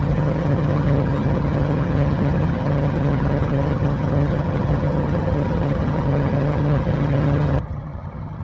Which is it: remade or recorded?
remade